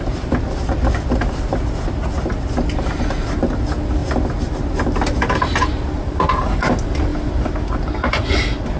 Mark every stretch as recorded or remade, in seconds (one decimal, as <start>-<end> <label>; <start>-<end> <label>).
0.0-8.8 recorded